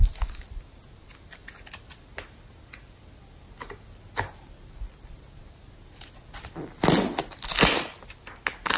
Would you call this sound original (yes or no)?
yes